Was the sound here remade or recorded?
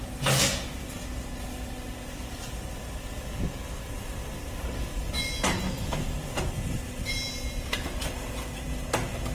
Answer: recorded